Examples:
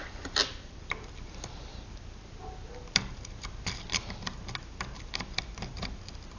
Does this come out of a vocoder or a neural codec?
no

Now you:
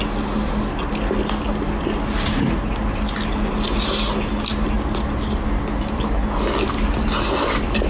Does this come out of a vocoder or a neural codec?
no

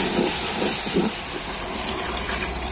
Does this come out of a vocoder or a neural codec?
yes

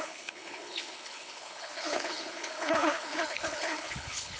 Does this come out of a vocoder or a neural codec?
yes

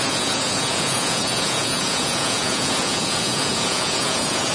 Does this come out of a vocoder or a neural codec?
yes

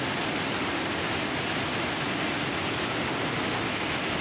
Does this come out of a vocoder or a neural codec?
no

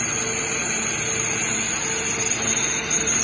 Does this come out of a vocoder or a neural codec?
no